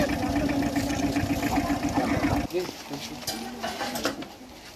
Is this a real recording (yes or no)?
yes